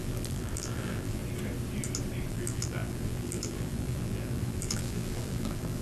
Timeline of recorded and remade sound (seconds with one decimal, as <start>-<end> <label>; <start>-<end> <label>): 0.0-1.2 remade; 1.2-2.3 recorded; 2.3-5.8 remade